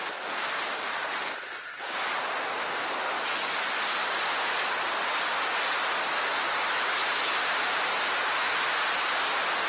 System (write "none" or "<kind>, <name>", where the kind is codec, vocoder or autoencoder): none